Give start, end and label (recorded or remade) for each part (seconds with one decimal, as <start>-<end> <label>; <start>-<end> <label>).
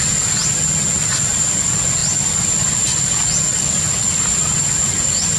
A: 0.0-5.4 recorded